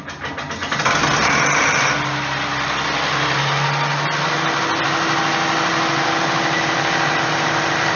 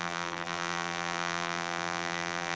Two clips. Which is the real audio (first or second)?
first